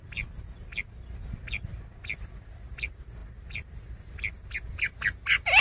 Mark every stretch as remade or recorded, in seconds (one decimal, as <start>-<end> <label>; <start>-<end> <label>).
0.0-5.6 recorded